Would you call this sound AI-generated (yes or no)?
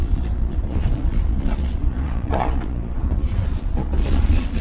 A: yes